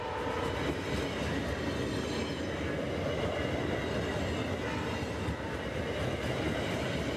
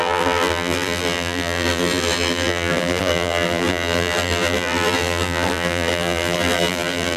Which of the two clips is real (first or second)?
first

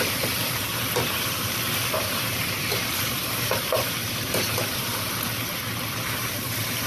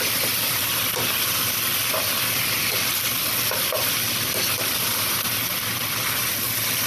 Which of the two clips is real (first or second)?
second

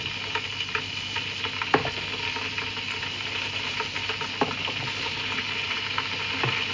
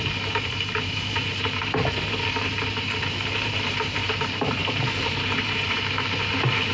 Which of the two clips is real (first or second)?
first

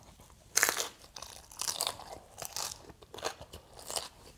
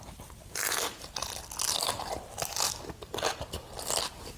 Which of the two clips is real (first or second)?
second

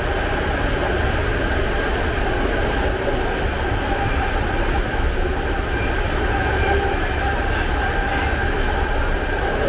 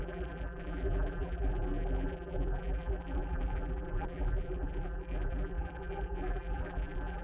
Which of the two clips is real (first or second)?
first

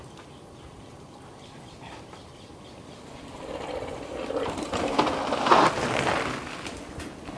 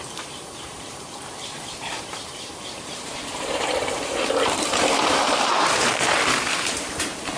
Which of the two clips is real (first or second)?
first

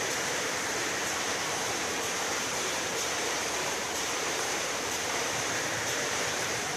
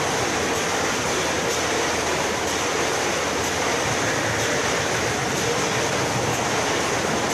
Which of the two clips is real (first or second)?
second